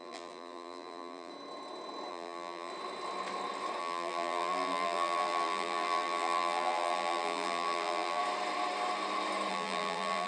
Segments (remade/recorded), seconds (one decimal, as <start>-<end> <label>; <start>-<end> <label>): 0.0-1.3 remade; 1.3-2.1 recorded; 2.1-2.7 remade; 2.7-3.8 recorded; 3.8-8.2 remade; 8.2-9.5 recorded; 9.5-10.3 remade